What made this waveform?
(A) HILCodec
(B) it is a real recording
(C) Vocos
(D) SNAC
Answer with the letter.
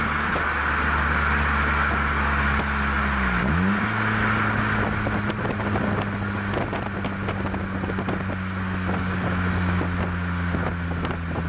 B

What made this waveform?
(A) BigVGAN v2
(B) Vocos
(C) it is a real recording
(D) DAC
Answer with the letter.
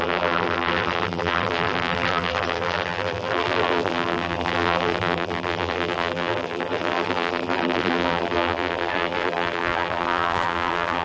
A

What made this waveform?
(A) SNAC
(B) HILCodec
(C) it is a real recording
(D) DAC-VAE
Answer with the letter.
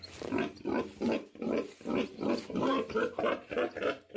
C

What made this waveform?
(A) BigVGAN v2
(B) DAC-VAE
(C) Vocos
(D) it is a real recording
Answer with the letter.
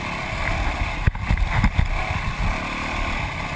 D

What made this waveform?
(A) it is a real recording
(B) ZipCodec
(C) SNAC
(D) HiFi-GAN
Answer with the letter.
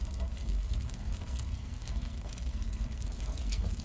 C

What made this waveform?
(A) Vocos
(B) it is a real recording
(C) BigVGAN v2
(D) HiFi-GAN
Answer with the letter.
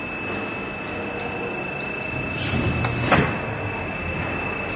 B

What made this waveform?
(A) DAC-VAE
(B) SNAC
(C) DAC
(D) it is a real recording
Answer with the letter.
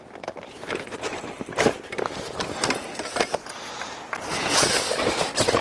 D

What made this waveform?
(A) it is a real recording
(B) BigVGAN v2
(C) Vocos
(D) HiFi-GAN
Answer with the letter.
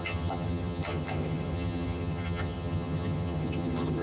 D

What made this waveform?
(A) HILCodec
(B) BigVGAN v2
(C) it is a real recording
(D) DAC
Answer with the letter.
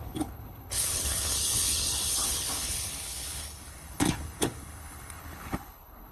A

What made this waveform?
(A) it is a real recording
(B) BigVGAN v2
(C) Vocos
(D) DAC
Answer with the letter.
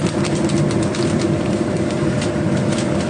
B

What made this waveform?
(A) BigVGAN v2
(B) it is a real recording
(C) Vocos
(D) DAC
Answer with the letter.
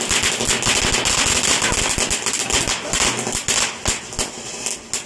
B